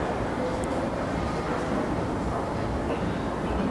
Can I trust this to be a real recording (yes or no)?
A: yes